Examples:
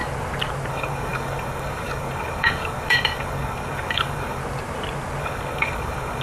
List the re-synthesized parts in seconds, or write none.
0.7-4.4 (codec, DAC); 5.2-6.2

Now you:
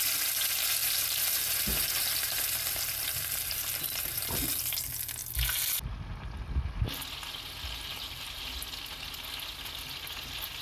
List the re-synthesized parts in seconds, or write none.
0.8-3.6 (vocoder, BigVGAN v2); 7.9-8.5

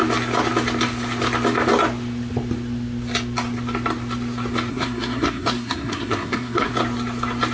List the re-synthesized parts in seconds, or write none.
4.7-6.7 (codec, SNAC)

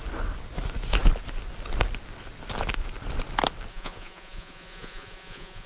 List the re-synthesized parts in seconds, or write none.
3.7-5.7 (vocoder, Vocos)

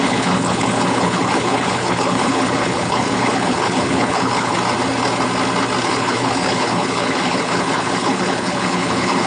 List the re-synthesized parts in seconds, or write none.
0.0-4.5 (codec, HILCodec); 5.8-9.3